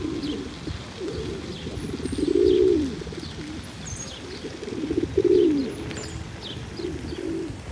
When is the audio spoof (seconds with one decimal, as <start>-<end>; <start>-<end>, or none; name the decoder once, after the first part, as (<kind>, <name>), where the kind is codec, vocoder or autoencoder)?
none